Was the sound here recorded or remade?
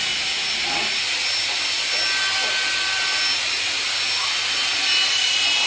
recorded